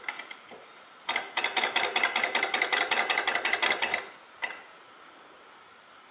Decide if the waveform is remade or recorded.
recorded